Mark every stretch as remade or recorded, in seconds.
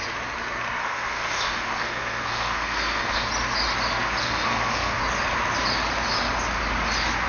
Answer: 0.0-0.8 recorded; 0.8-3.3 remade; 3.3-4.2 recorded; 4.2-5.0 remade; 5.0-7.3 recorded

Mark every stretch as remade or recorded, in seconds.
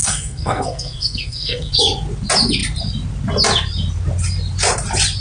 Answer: 0.0-1.7 remade; 1.7-5.2 recorded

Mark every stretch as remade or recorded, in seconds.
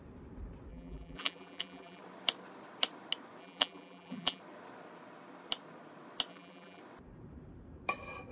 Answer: 0.0-0.7 recorded; 0.7-2.0 remade; 2.0-3.4 recorded; 3.4-4.4 remade; 4.4-6.3 recorded; 6.3-6.8 remade; 6.8-8.3 recorded